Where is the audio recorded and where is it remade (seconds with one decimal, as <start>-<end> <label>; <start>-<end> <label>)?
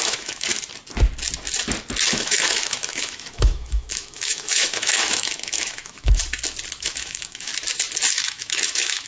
0.0-0.5 remade; 0.5-2.1 recorded; 2.1-6.2 remade; 6.2-6.8 recorded; 6.8-7.5 remade; 7.5-8.1 recorded; 8.1-9.1 remade